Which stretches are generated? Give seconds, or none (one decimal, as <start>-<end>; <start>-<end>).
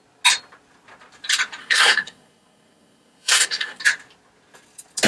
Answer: 1.6-3.8